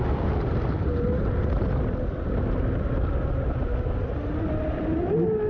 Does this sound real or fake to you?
real